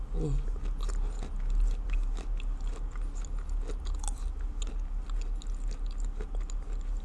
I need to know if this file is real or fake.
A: real